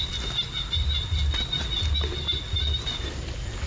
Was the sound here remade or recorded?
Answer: recorded